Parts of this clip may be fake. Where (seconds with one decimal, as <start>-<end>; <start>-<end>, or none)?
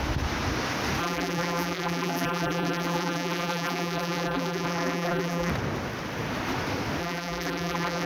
1.0-5.5; 7.0-8.1